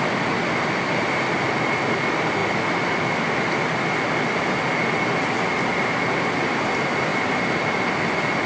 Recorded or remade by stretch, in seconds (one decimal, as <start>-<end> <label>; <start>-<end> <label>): 0.0-8.5 recorded